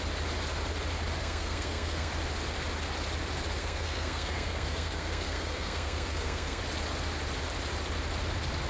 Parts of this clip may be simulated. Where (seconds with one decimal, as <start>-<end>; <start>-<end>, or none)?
1.2-2.1; 3.6-6.6